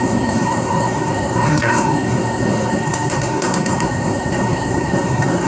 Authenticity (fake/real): fake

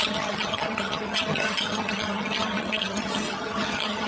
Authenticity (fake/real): fake